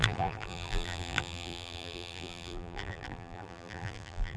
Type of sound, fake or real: fake